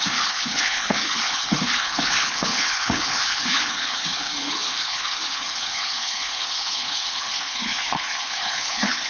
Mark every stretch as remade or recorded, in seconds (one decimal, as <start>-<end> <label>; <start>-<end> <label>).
0.0-9.1 remade